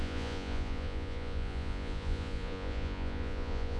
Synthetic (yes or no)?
yes